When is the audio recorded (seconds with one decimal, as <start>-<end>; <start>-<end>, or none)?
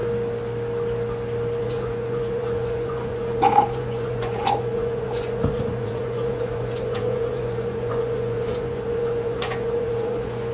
0.0-1.6